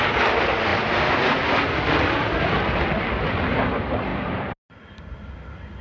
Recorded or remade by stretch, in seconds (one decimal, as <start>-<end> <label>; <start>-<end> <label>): 0.0-5.8 recorded